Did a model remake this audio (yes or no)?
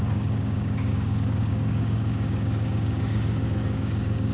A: yes